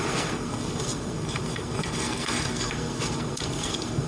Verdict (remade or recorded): remade